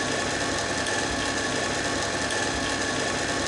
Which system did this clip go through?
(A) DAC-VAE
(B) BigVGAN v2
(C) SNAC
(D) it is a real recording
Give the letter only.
D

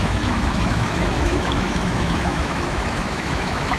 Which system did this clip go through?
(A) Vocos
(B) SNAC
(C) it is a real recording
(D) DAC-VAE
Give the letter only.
D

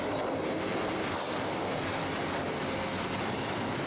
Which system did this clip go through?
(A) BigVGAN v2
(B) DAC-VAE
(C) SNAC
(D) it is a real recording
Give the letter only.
D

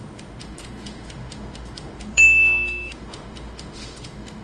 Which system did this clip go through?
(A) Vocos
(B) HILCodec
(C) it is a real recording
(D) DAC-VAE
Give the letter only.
D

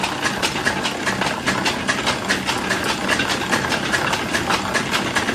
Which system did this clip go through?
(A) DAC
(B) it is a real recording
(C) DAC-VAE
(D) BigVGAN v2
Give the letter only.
B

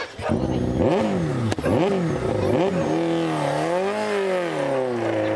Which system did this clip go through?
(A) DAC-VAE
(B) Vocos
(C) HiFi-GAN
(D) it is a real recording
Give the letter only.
D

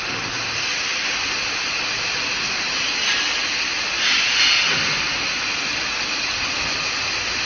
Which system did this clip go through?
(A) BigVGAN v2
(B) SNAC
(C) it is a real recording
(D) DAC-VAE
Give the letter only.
C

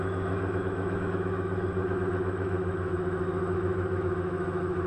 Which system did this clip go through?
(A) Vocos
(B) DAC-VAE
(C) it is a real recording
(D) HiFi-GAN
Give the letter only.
B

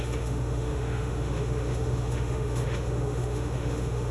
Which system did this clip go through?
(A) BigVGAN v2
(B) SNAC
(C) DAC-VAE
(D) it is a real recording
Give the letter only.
C